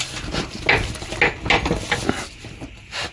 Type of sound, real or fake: real